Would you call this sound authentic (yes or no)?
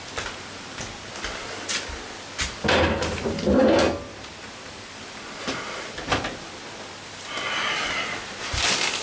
yes